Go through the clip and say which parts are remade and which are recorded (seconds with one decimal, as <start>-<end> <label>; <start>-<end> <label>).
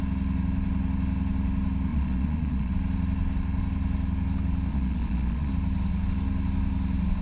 0.0-1.9 recorded; 1.9-2.7 remade; 2.7-4.7 recorded; 4.7-5.5 remade; 5.5-7.2 recorded